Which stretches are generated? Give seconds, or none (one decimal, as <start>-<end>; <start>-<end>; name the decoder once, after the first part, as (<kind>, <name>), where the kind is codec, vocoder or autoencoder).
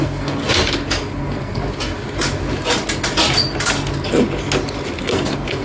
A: 0.0-0.4 (codec, SNAC); 1.2-1.6; 5.0-5.6